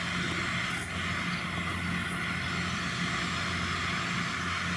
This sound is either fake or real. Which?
real